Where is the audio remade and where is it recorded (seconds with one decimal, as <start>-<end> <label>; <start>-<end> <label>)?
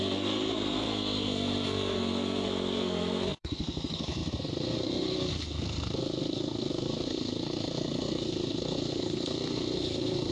0.0-10.3 remade